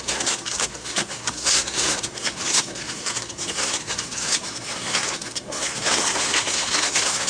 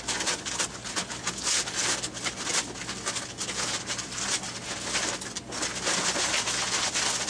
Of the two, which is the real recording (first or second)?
second